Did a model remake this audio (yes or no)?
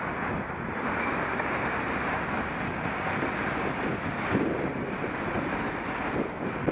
no